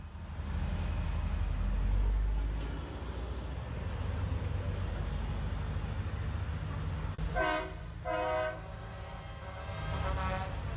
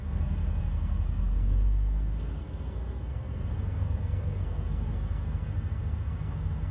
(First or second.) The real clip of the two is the first